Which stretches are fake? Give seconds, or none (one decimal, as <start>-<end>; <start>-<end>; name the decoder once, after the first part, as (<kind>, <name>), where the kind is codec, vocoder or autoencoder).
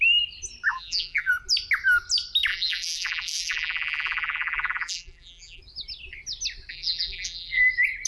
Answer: 0.7-1.3 (vocoder, BigVGAN v2); 2.5-5.6; 6.7-7.6